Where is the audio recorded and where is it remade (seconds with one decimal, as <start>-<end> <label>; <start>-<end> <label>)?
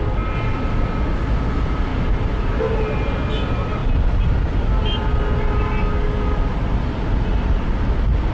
0.0-1.9 recorded; 1.9-2.6 remade; 2.6-8.3 recorded